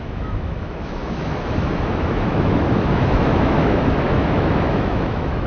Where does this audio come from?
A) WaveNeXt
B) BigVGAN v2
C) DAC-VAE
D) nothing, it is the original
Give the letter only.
C